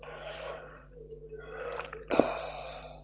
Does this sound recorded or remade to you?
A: remade